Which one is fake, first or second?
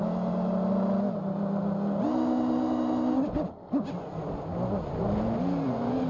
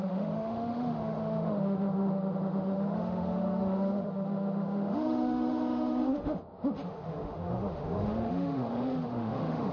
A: second